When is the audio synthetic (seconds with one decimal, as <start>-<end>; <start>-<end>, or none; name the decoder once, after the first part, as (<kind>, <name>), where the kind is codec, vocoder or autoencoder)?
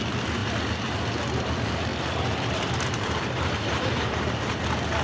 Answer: 1.9-4.3 (vocoder, BigVGAN v2)